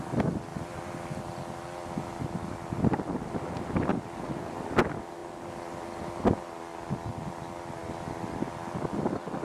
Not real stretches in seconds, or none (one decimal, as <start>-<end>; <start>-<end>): none